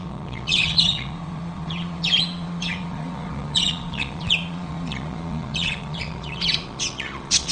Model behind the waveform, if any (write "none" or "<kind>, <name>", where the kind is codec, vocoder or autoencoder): vocoder, Vocos